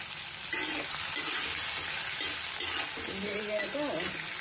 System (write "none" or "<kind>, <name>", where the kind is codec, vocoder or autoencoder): none